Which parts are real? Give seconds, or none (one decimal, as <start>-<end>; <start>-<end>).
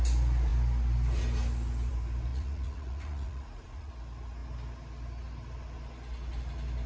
0.0-2.3; 3.9-6.9